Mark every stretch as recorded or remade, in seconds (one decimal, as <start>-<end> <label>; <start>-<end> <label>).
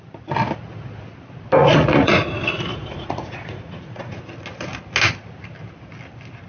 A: 0.0-1.6 recorded; 1.6-2.3 remade; 2.3-2.7 recorded; 2.7-4.2 remade; 4.2-6.5 recorded